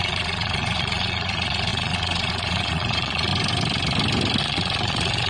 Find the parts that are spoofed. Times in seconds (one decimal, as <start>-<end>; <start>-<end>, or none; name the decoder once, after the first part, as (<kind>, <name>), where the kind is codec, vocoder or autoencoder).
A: 0.0-3.3 (vocoder, Vocos); 4.4-5.3